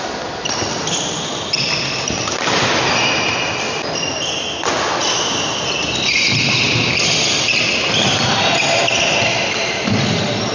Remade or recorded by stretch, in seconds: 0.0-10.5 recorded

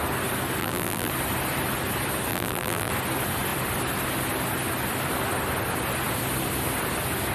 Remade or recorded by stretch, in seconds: 0.0-0.6 recorded; 0.6-1.1 remade; 1.1-2.3 recorded; 2.3-2.9 remade; 2.9-7.3 recorded

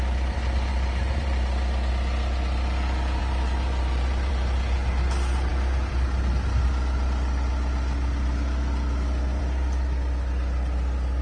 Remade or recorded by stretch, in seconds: 0.0-0.7 recorded; 0.7-1.9 remade; 1.9-3.2 recorded; 3.2-4.3 remade; 4.3-11.2 recorded

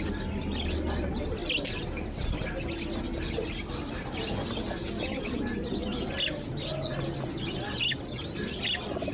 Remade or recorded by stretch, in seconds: 0.0-9.1 recorded

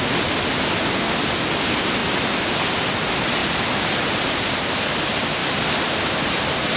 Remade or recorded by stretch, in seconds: 0.0-2.0 recorded; 2.0-2.7 remade; 2.7-3.4 recorded; 3.4-4.6 remade; 4.6-5.4 recorded; 5.4-5.9 remade; 5.9-6.8 recorded